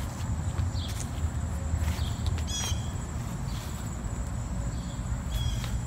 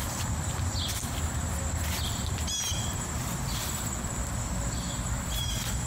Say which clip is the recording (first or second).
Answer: first